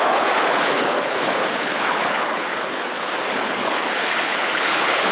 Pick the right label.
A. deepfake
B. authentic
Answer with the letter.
A